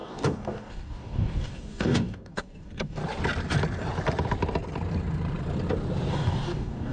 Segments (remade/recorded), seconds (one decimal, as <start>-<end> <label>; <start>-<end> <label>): 0.0-3.0 remade; 3.0-6.1 recorded; 6.1-6.9 remade